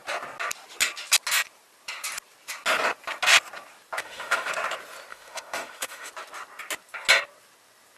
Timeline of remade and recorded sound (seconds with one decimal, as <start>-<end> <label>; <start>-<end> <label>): 0.0-4.0 recorded; 4.0-4.5 remade; 4.5-5.1 recorded; 5.1-6.1 remade; 6.1-8.0 recorded